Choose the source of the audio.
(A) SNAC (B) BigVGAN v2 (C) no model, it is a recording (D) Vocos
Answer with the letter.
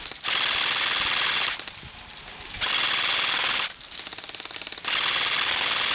C